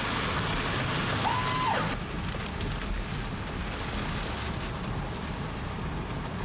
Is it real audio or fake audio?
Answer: real